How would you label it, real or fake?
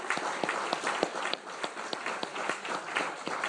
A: real